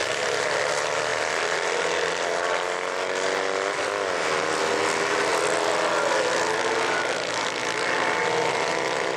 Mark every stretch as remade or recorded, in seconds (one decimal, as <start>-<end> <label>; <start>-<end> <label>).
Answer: 0.0-0.6 remade; 0.6-5.3 recorded; 5.3-6.2 remade; 6.2-9.2 recorded